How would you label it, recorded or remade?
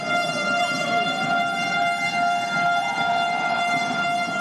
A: remade